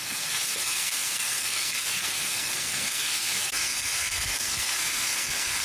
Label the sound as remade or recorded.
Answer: remade